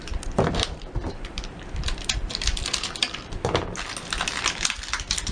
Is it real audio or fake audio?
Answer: real